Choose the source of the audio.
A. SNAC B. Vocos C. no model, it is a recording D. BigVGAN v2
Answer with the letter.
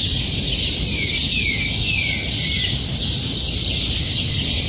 C